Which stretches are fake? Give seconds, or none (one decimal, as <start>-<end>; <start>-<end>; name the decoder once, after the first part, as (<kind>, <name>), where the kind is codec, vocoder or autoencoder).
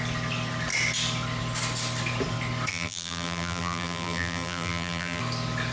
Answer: 2.7-5.2 (vocoder, BigVGAN v2)